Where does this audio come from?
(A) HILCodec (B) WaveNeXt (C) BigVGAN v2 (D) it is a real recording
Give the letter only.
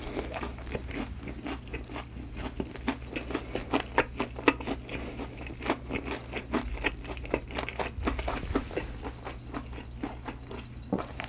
D